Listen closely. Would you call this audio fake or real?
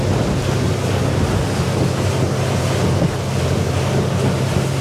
real